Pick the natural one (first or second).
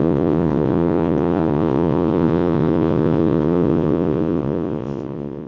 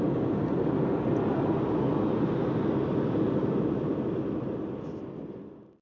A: second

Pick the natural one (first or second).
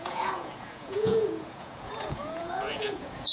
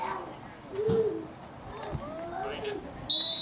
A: second